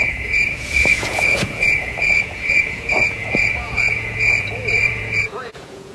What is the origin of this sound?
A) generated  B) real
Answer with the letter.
A